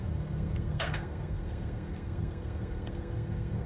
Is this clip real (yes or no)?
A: no